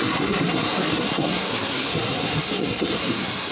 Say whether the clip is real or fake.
fake